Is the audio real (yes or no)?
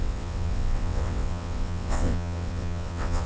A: no